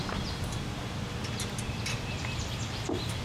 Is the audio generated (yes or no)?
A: no